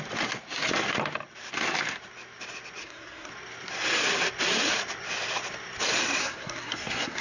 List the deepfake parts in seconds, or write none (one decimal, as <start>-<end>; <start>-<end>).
2.8-3.3; 6.2-7.2